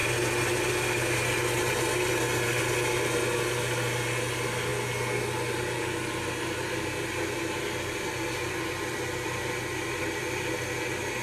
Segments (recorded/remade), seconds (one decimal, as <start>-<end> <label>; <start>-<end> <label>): 0.0-11.2 recorded